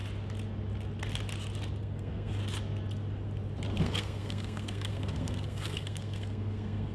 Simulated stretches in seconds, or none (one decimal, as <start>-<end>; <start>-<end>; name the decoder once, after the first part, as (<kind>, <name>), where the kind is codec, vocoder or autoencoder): 1.8-2.4 (codec, SNAC); 3.8-6.9